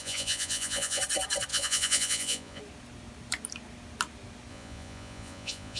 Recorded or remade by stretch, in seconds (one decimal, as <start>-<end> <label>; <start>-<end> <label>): 0.0-1.0 remade; 1.0-1.5 recorded; 1.5-2.6 remade; 2.6-4.5 recorded; 4.5-5.8 remade